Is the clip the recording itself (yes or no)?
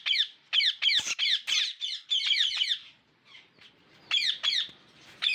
no